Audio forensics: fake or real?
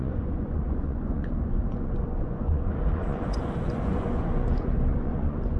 fake